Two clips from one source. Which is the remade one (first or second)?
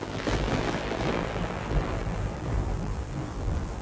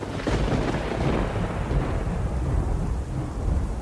first